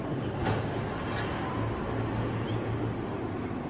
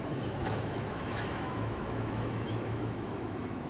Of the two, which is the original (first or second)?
first